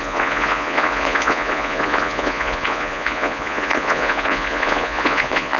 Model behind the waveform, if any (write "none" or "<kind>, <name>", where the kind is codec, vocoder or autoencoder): vocoder, Vocos